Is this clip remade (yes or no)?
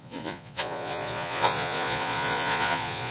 yes